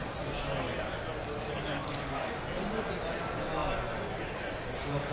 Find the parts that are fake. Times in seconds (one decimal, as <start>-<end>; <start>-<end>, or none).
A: 1.2-2.3